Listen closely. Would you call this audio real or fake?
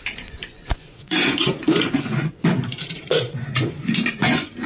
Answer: fake